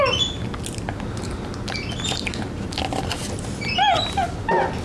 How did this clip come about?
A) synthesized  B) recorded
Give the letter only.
B